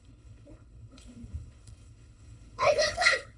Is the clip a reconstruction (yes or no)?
yes